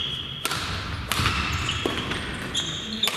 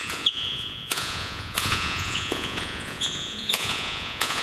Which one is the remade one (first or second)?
second